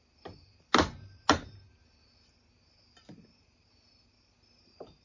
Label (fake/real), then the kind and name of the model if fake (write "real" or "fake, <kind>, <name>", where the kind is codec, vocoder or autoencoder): real